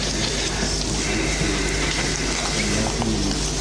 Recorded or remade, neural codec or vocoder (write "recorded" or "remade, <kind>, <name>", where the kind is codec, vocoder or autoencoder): recorded